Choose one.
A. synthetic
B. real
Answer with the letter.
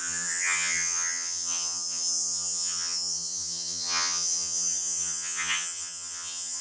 A